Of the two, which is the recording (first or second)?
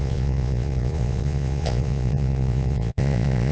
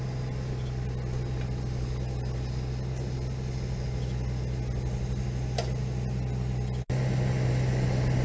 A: second